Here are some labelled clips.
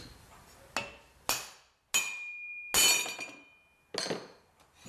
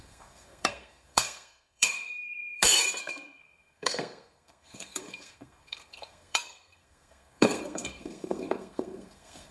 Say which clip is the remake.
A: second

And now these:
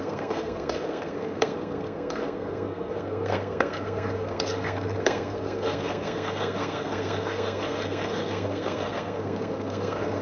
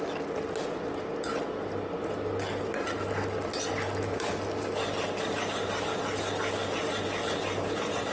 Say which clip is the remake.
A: first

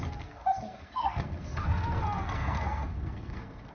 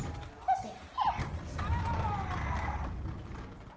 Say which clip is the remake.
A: first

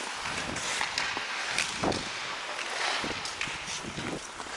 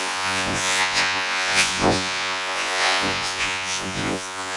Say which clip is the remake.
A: second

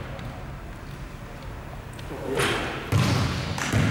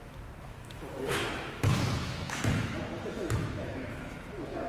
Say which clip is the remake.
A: second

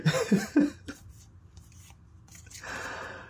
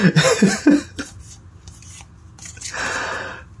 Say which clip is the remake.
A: first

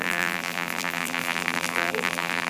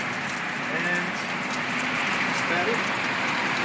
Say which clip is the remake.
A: first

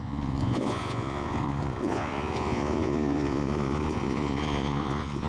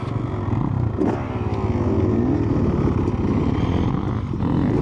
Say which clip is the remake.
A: first